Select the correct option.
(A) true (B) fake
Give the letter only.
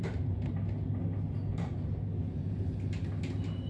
A